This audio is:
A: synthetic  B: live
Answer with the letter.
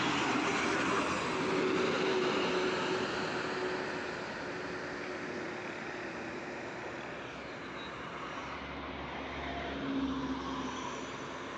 B